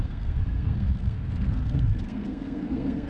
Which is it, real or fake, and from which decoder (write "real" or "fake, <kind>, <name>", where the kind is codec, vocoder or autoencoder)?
fake, codec, SNAC